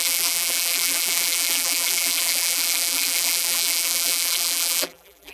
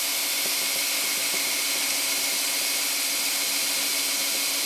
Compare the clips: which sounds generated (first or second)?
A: first